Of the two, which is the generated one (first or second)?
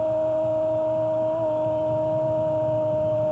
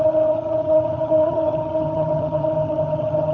second